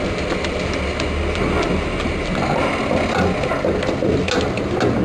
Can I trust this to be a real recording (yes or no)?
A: yes